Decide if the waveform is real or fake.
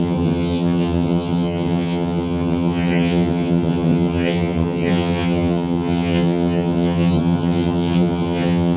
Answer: fake